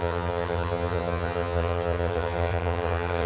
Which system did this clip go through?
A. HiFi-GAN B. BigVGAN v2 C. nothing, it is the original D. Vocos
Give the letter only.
A